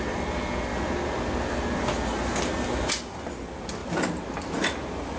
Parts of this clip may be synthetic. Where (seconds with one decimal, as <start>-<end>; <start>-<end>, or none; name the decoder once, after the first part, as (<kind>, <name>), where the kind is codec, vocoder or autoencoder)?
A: 0.0-0.7 (vocoder, BigVGAN v2); 2.9-3.8; 4.4-5.2